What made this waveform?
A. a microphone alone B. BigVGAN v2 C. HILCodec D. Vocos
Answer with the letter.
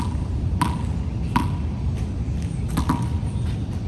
A